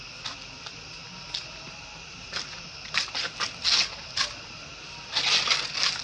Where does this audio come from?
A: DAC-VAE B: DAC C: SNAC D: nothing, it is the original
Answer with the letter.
D